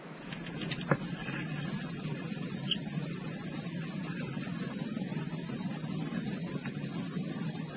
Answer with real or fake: real